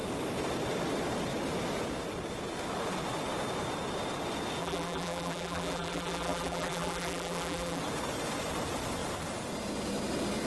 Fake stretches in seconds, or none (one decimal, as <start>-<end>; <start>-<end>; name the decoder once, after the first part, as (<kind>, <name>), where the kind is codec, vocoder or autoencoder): 4.6-7.8 (vocoder, BigVGAN v2)